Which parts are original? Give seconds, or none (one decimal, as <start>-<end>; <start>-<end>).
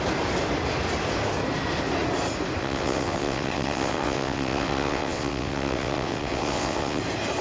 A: 0.0-2.6; 7.0-7.4